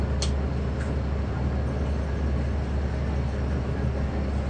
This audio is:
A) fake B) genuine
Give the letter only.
B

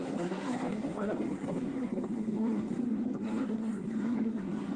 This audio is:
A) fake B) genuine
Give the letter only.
A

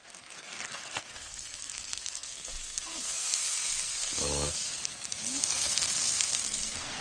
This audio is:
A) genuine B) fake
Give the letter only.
B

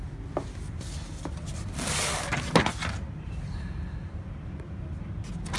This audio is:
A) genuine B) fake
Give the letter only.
A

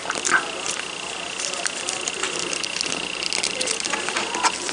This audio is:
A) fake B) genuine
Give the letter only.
B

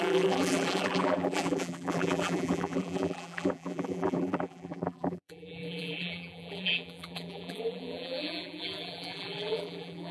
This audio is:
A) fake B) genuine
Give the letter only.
A